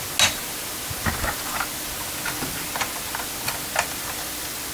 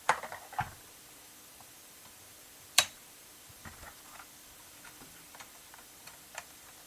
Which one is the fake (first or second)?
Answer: second